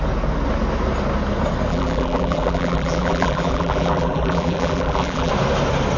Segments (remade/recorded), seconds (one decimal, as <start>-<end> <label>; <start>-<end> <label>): 0.0-1.7 recorded; 1.7-5.3 remade; 5.3-6.0 recorded